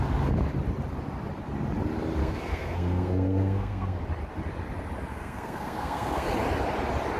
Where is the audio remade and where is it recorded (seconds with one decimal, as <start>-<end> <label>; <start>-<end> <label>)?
0.0-2.2 recorded; 2.2-4.0 remade; 4.0-5.1 recorded; 5.1-6.3 remade; 6.3-7.2 recorded